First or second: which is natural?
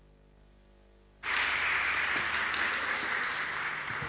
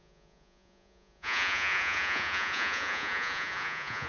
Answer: first